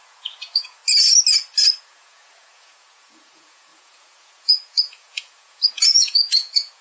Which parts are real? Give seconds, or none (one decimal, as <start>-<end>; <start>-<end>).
0.8-1.8